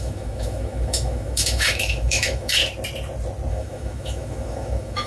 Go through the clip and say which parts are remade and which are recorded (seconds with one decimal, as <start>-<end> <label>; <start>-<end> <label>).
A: 0.0-2.6 remade; 2.6-3.5 recorded; 3.5-5.1 remade